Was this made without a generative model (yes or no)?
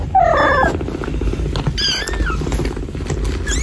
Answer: yes